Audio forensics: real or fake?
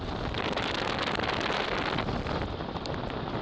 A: real